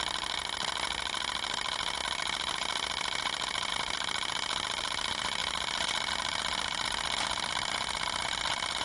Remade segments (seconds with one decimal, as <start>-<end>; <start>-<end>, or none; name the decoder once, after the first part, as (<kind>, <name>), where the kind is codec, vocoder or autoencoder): none